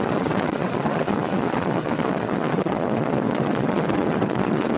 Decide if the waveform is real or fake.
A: fake